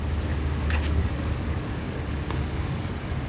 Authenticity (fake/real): fake